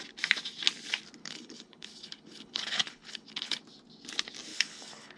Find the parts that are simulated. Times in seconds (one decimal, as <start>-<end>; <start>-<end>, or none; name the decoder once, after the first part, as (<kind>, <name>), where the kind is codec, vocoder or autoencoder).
1.2-3.6 (codec, HILCodec); 4.5-5.2